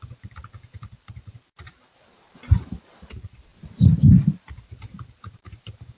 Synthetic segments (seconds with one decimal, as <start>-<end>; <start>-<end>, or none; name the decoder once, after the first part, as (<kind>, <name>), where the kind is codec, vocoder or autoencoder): 0.0-3.5 (vocoder, BigVGAN v2); 4.4-6.0